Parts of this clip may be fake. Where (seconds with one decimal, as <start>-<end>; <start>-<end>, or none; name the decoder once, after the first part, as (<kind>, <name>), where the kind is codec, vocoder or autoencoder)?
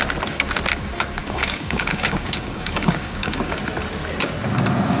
1.2-3.6 (codec, DAC)